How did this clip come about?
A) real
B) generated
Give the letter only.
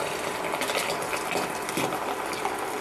B